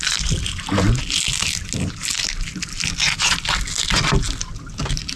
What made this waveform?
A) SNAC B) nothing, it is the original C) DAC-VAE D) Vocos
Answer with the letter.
B